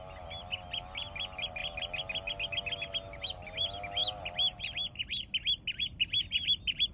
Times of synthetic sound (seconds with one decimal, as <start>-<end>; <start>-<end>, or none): none